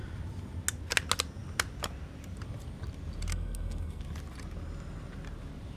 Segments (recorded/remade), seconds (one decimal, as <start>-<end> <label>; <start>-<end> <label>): 0.0-3.3 recorded; 3.3-4.0 remade; 4.0-5.8 recorded